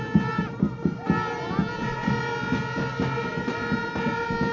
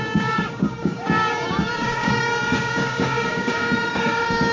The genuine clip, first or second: first